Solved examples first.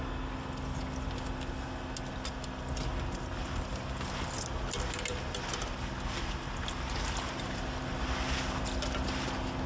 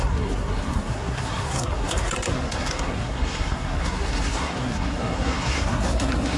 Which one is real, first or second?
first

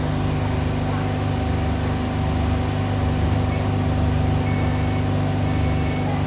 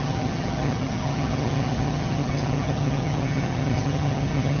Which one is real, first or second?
first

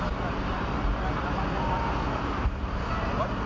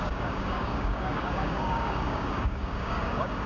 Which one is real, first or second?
first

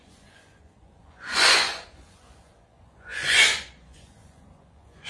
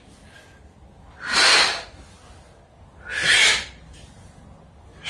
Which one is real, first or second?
second